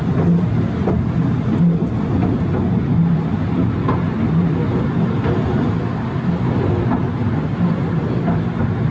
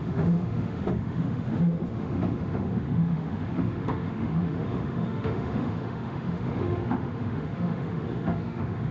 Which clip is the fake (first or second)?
second